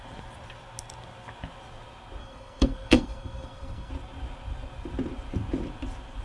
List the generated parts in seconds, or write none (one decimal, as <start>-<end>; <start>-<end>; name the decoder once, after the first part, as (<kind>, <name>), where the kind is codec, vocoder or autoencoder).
2.2-3.9 (codec, SNAC)